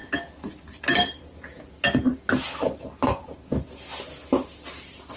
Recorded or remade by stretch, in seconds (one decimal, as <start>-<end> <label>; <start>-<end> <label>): 0.0-5.2 recorded